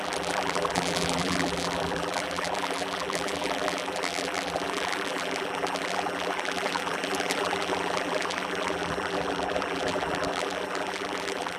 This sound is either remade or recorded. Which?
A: remade